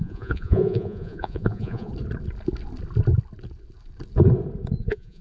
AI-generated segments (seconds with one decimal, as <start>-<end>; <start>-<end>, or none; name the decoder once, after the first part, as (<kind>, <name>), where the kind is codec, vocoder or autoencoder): 0.0-1.9 (vocoder, Vocos); 4.8-5.2